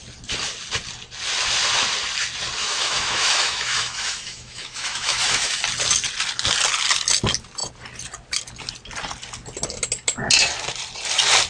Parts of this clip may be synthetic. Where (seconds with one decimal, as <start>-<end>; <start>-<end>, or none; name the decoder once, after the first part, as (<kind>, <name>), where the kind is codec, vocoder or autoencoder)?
2.6-5.6 (autoencoder, DAC-VAE)